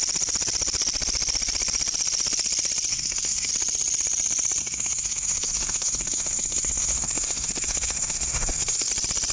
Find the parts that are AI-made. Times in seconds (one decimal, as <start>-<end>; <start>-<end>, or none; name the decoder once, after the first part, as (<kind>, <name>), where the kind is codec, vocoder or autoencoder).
2.9-3.5 (codec, SNAC); 4.6-8.9

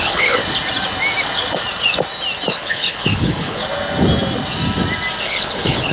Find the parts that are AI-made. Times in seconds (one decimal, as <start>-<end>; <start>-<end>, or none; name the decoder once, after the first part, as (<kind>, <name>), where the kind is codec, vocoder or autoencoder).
0.0-0.4 (codec, HILCodec); 2.5-3.6; 5.2-5.9

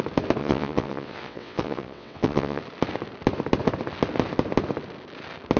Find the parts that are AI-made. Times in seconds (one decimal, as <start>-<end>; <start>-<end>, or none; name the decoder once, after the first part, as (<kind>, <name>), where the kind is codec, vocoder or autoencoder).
0.4-2.6 (vocoder, WaveNeXt)

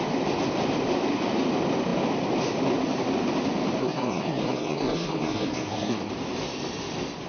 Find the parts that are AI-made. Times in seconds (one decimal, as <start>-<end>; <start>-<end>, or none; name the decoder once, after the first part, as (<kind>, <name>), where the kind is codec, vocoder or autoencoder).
3.8-6.1 (codec, SNAC)

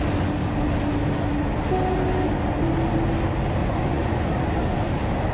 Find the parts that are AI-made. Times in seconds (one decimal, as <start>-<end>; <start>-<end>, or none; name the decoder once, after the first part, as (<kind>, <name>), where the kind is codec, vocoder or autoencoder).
3.6-4.3 (vocoder, Vocos)

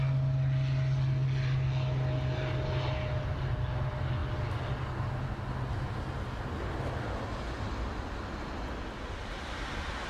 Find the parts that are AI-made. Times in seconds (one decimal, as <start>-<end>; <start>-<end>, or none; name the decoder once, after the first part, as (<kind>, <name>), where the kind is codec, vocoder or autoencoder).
none

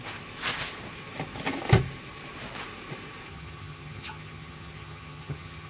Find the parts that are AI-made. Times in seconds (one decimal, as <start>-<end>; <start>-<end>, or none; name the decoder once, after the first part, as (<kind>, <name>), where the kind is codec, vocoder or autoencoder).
3.3-5.7 (vocoder, HiFi-GAN)

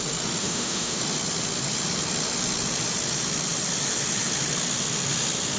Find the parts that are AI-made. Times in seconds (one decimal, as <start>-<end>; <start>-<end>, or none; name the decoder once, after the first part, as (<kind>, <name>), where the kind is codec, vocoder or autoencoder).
0.4-1.0 (autoencoder, DAC-VAE)